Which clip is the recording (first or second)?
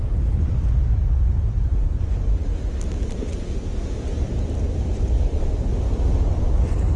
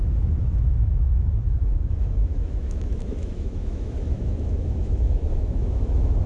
first